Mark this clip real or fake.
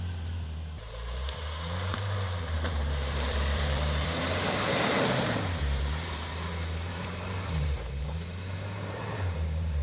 fake